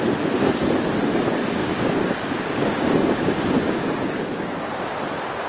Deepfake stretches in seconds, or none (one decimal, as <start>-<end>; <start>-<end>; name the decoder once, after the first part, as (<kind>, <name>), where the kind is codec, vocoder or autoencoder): 1.6-4.9 (codec, DAC)